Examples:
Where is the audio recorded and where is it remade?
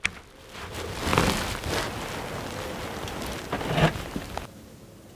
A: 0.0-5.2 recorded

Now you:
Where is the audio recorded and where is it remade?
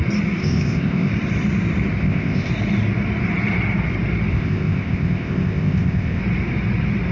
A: 0.0-0.4 recorded; 0.4-1.1 remade; 1.1-2.0 recorded; 2.0-2.5 remade; 2.5-4.3 recorded; 4.3-6.2 remade; 6.2-7.1 recorded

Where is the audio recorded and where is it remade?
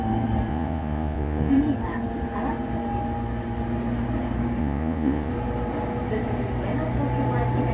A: 0.0-0.5 recorded; 0.5-1.5 remade; 1.5-4.6 recorded; 4.6-5.3 remade; 5.3-7.7 recorded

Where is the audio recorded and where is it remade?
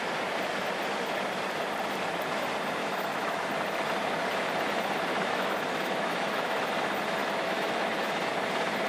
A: 0.0-2.8 recorded; 2.8-3.4 remade; 3.4-5.1 recorded; 5.1-6.7 remade; 6.7-7.2 recorded; 7.2-8.3 remade; 8.3-8.9 recorded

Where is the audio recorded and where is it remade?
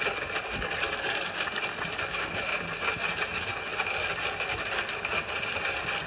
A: 0.0-6.1 recorded